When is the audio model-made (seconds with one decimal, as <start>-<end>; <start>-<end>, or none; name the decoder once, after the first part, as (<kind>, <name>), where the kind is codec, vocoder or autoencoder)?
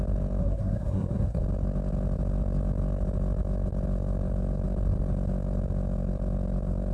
0.4-1.4 (codec, SNAC)